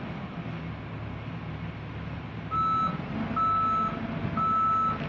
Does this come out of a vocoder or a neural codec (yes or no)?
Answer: no